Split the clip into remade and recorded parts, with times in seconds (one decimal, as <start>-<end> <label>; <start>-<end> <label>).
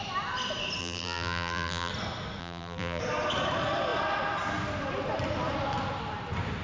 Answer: 0.0-0.8 recorded; 0.8-1.9 remade; 1.9-2.4 recorded; 2.4-3.0 remade; 3.0-6.6 recorded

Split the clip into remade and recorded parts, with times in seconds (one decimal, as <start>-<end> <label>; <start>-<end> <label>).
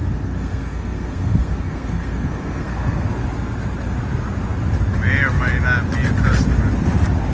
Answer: 0.0-3.1 remade; 3.1-7.3 recorded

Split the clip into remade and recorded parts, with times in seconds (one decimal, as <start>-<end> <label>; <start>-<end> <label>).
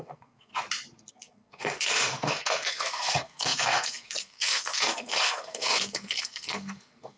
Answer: 0.0-0.5 remade; 0.5-1.1 recorded; 1.1-7.2 remade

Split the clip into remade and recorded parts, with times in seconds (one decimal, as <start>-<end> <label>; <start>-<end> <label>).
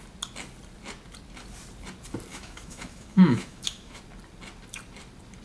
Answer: 0.0-2.3 recorded; 2.3-4.0 remade; 4.0-5.4 recorded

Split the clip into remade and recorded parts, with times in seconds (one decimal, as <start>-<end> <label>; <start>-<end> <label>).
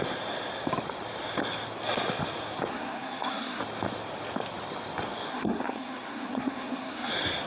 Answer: 0.0-2.7 recorded; 2.7-3.6 remade; 3.6-5.3 recorded; 5.3-7.1 remade; 7.1-7.5 recorded